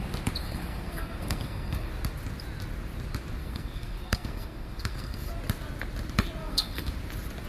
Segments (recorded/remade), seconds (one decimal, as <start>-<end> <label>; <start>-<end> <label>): 0.0-0.4 recorded; 0.4-1.9 remade; 1.9-3.4 recorded; 3.4-5.3 remade; 5.3-6.4 recorded; 6.4-6.9 remade; 6.9-7.5 recorded